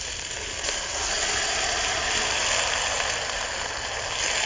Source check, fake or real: real